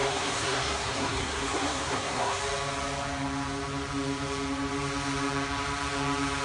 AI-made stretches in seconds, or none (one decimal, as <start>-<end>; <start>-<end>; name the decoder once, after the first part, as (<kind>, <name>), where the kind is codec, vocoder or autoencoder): 0.0-2.4 (codec, SNAC)